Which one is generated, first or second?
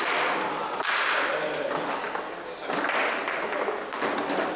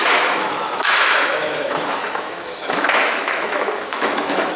second